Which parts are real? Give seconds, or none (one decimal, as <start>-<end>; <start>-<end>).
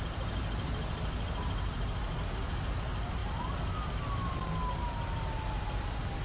0.0-6.2